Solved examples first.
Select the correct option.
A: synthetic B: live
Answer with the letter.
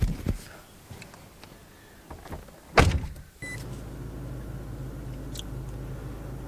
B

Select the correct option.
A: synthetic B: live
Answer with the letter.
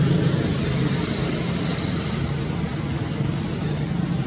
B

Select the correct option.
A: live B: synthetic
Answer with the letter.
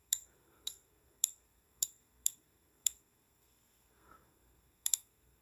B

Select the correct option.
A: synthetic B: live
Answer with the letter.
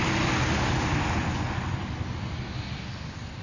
B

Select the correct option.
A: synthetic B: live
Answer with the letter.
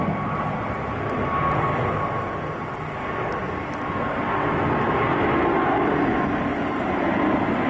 B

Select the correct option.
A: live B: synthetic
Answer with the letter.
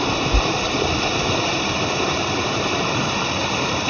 B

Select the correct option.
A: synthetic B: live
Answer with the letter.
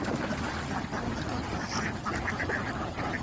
B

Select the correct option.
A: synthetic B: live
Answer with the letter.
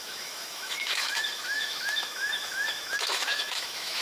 A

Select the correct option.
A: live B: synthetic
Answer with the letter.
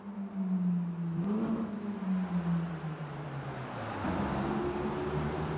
A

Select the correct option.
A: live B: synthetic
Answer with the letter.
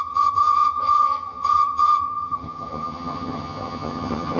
B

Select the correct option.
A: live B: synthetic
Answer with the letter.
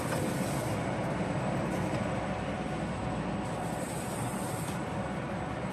A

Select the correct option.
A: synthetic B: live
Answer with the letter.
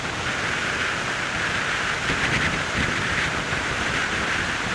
B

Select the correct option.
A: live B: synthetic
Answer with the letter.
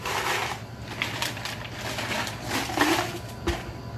A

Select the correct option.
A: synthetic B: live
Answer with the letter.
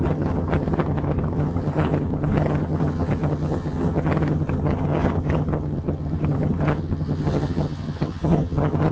A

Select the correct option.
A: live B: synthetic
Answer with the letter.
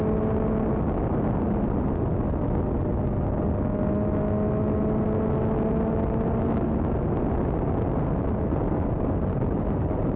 A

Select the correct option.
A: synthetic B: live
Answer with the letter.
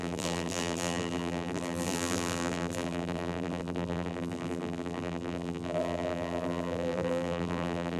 A